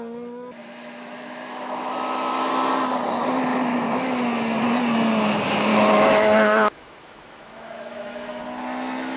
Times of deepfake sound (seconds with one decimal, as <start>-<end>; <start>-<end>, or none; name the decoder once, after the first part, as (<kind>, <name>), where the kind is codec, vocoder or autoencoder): 0.6-2.5 (autoencoder, DAC-VAE); 3.5-4.2; 5.7-8.4